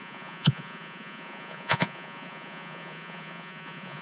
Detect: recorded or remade remade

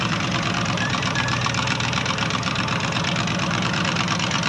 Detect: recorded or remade remade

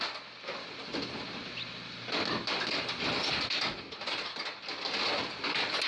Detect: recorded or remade recorded